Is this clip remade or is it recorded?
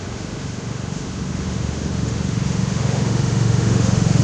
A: remade